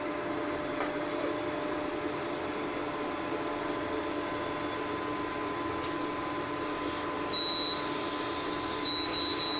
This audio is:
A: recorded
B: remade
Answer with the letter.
A